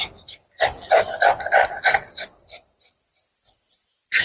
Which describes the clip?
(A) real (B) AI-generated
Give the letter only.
A